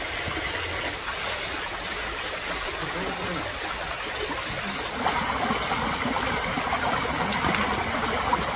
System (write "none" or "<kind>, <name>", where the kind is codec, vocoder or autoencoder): none